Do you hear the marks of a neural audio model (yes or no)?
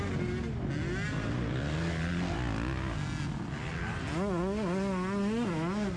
no